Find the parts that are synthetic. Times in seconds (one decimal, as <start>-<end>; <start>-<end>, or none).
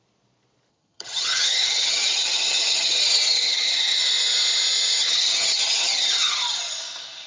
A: 0.7-4.0; 5.0-6.6